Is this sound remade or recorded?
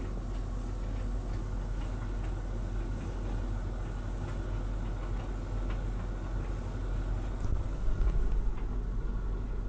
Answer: recorded